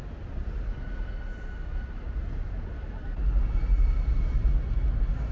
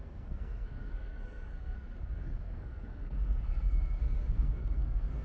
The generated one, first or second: second